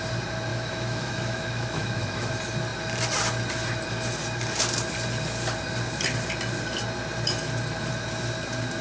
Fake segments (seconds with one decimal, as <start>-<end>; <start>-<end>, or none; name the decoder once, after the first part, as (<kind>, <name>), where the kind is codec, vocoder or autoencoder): 0.5-2.3 (autoencoder, DAC-VAE)

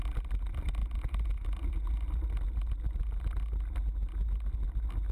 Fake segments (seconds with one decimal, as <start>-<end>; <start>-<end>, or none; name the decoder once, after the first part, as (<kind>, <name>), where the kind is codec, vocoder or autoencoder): none

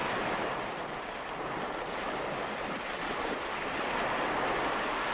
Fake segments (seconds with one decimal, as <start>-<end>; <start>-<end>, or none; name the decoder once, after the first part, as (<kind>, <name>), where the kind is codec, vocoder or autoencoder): none

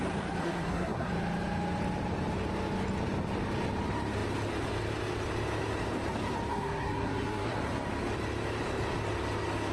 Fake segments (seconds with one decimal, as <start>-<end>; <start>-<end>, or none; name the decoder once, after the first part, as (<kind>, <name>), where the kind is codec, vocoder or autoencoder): 0.4-1.1 (codec, SNAC); 6.5-7.6

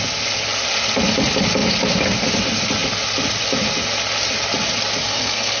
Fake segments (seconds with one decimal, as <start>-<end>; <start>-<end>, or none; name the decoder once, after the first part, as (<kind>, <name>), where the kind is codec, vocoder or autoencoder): 5.0-5.6 (codec, SNAC)

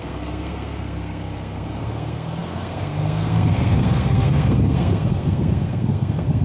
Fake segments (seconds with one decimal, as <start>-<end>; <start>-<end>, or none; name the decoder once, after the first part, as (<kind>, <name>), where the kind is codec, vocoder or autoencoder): 0.0-6.4 (codec, SNAC)

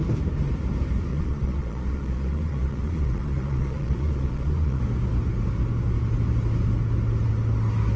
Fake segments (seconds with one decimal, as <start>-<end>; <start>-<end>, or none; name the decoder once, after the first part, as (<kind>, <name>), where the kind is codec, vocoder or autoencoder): 1.1-4.8 (vocoder, Vocos)

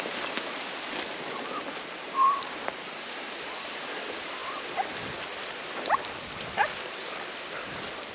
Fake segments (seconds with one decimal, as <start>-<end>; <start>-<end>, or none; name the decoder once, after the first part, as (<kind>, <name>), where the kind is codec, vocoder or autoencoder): 4.4-8.1 (vocoder, BigVGAN v2)